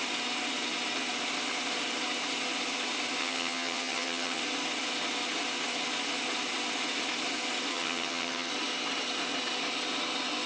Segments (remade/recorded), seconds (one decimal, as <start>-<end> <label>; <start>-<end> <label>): 0.0-3.2 recorded; 3.2-4.4 remade; 4.4-7.7 recorded; 7.7-8.5 remade; 8.5-10.5 recorded